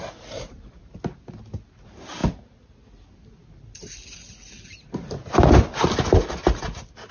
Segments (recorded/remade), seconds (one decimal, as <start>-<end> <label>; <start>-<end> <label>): 0.0-7.1 recorded